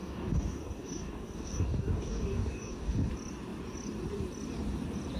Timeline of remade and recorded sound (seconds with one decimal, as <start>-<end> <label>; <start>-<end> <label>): 0.0-3.1 remade; 3.1-5.2 recorded